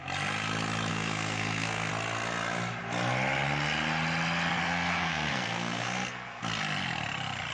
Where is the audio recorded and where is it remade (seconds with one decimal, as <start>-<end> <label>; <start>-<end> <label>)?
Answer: 0.0-0.9 recorded; 0.9-1.9 remade; 1.9-4.6 recorded; 4.6-6.4 remade; 6.4-7.5 recorded